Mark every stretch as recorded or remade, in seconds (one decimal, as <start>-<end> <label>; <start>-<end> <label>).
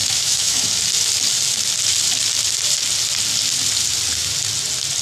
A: 0.0-0.7 remade; 0.7-5.0 recorded